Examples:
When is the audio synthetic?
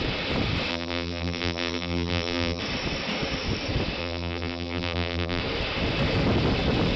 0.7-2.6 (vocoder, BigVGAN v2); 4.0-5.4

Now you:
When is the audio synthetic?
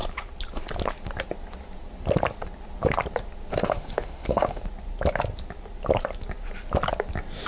3.5-4.6 (autoencoder, DAC-VAE)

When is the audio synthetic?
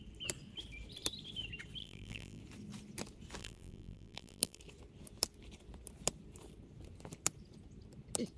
1.8-2.4 (vocoder, BigVGAN v2); 3.4-4.6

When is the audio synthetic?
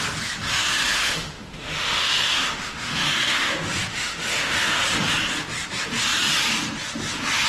0.5-3.5 (autoencoder, DAC-VAE); 3.9-4.8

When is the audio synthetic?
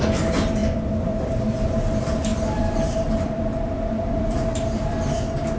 0.6-1.8 (vocoder, BigVGAN v2); 2.3-4.9